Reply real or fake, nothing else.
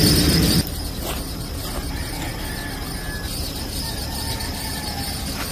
real